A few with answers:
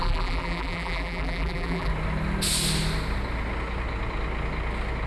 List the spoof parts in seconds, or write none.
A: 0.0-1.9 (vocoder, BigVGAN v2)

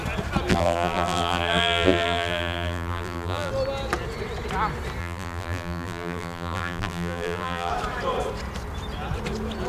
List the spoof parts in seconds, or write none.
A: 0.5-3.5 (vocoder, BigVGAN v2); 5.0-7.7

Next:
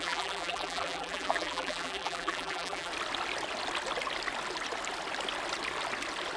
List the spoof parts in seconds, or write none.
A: 0.0-2.9 (vocoder, BigVGAN v2)

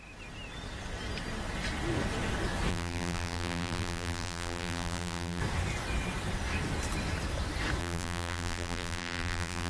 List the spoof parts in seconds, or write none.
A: 2.7-5.4 (vocoder, BigVGAN v2); 7.8-9.7